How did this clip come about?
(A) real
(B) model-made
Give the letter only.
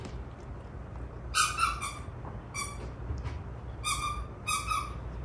A